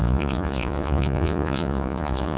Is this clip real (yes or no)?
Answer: no